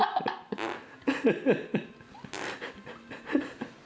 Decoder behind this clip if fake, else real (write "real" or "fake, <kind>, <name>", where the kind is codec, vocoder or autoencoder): real